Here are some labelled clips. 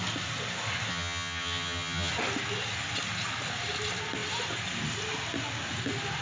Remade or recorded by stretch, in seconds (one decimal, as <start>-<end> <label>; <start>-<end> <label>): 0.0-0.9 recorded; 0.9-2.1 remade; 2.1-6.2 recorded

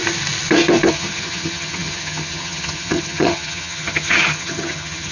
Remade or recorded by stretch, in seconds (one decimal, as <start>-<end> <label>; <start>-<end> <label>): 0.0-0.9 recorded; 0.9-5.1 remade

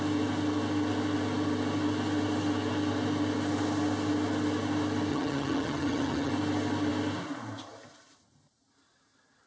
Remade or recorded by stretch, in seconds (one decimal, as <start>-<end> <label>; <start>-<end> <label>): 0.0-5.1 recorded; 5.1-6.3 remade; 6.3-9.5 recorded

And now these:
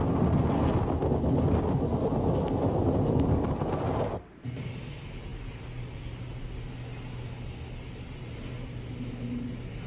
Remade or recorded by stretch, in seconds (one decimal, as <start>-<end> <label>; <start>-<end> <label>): 0.0-9.9 recorded